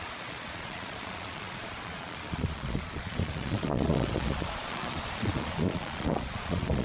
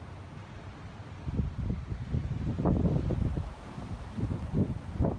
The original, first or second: second